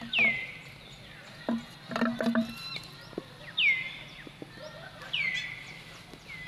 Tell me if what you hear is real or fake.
real